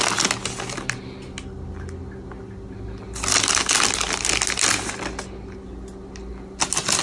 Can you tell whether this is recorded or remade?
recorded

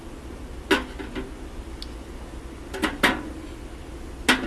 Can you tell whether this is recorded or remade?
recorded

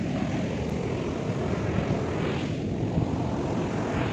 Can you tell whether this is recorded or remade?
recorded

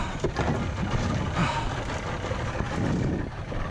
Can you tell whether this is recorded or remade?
recorded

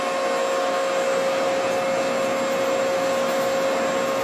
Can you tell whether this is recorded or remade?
recorded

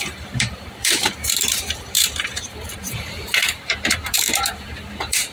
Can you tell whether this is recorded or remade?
remade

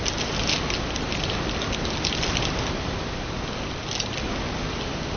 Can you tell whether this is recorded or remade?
recorded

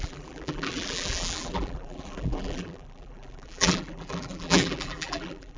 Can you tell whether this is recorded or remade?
remade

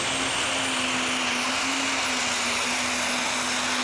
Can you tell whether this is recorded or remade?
recorded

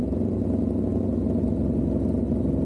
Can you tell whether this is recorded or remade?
recorded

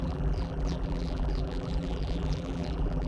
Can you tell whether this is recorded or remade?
remade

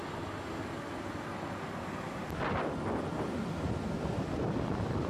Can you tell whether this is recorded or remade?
recorded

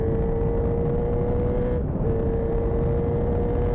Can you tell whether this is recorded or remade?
recorded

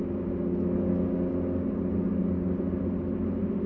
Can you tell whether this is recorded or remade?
recorded